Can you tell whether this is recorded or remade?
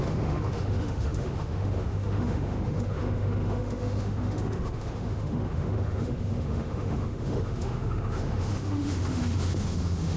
remade